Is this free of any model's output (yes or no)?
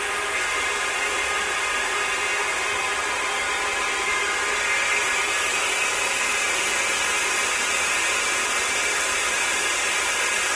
yes